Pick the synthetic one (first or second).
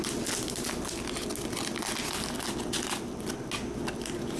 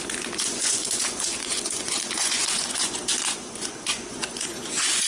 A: second